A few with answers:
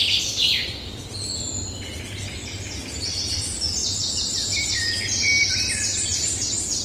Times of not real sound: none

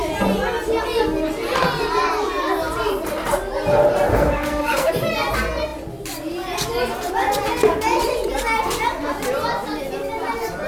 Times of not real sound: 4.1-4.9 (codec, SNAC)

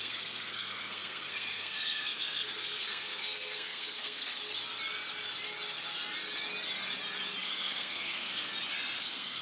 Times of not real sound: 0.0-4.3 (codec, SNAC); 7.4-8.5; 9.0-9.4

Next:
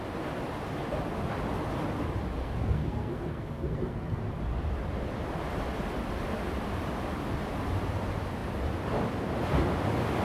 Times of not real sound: 2.4-4.2 (codec, SNAC)